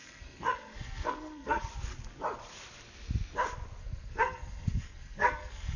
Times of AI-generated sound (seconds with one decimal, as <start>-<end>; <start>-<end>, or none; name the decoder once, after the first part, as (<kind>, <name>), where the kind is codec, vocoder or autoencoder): 0.0-1.7 (codec, SNAC); 3.8-5.8